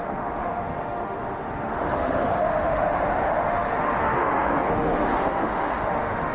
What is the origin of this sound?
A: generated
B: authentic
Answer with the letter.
A